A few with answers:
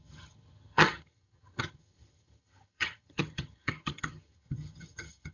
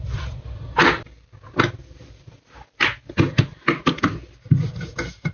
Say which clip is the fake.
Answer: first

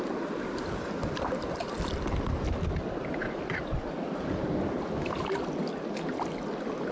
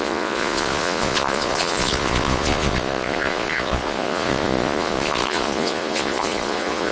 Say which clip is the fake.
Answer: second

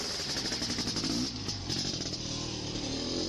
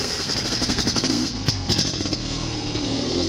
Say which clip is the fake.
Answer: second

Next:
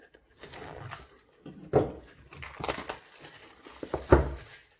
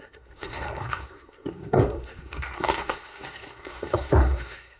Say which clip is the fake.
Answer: second